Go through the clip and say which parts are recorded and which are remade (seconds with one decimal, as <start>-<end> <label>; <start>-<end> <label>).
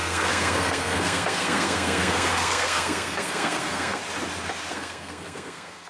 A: 0.0-4.0 remade; 4.0-4.7 recorded; 4.7-5.9 remade